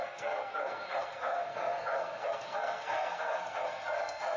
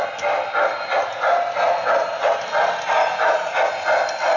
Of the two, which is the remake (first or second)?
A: first